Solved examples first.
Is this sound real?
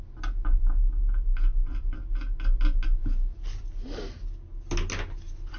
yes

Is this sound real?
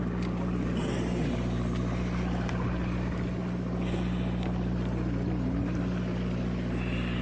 yes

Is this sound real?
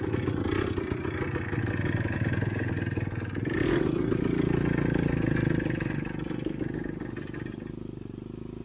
yes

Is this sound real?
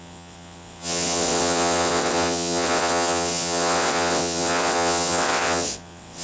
no